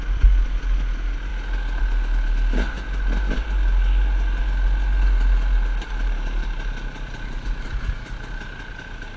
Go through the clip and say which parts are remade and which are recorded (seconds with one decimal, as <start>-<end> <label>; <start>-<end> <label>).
0.0-9.2 recorded